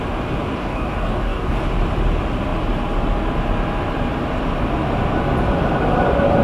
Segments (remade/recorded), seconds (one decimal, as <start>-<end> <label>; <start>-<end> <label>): 0.0-0.6 recorded; 0.6-1.6 remade; 1.6-6.4 recorded